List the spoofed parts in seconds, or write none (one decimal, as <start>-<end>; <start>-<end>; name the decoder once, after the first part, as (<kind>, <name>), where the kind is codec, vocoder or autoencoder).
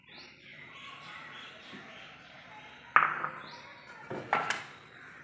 0.5-2.7 (vocoder, BigVGAN v2)